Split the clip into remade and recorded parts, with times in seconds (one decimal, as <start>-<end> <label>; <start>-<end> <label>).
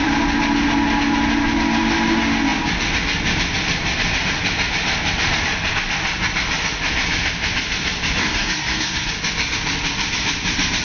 0.0-8.2 recorded; 8.2-9.1 remade; 9.1-10.8 recorded